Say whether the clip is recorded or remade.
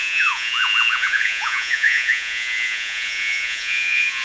remade